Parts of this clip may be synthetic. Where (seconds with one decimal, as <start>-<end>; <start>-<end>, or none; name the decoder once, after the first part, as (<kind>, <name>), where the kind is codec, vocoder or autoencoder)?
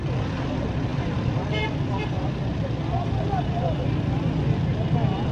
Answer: none